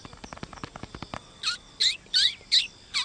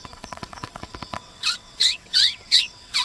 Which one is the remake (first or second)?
second